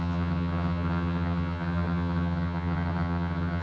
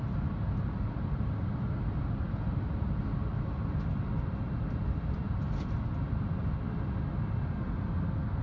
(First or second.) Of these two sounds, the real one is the second